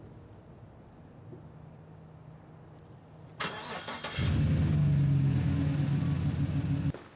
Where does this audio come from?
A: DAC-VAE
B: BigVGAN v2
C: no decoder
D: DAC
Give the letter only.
C